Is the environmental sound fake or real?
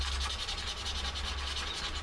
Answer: real